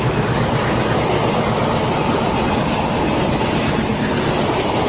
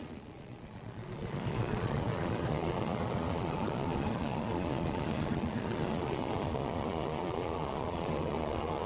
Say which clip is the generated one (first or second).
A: second